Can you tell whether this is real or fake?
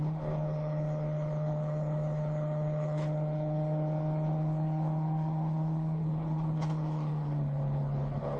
fake